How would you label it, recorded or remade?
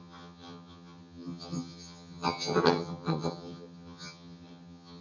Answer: remade